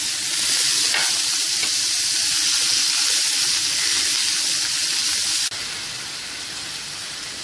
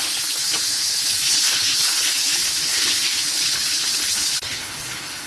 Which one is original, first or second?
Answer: first